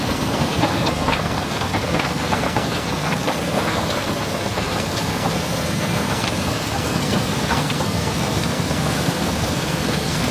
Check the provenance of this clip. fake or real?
fake